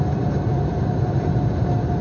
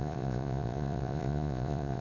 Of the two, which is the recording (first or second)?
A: first